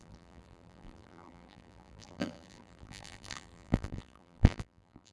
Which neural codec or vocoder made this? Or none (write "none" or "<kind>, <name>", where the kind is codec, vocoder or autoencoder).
vocoder, BigVGAN v2